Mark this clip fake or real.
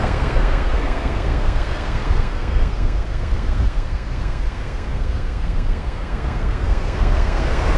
fake